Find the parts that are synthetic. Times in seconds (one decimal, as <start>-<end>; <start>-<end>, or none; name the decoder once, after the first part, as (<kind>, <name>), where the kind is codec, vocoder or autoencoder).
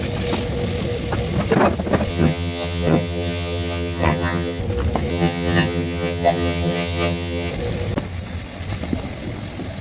2.1-4.6 (vocoder, HiFi-GAN); 5.1-7.5